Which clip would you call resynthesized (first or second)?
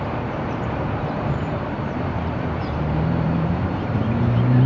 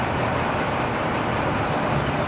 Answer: first